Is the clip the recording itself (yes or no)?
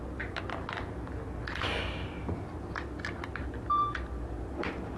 yes